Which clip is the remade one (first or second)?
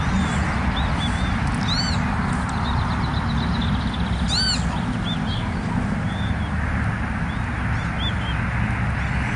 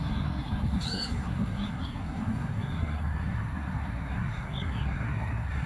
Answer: second